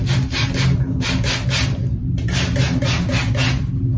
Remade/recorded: recorded